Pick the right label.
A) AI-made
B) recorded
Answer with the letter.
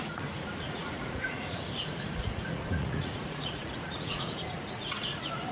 A